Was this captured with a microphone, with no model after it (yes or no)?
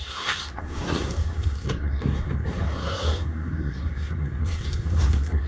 no